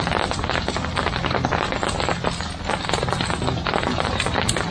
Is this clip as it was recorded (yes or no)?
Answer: yes